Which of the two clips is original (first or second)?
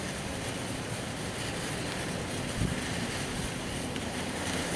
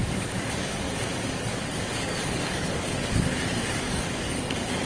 first